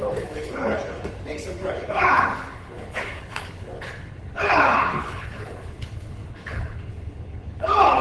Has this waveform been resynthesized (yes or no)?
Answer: yes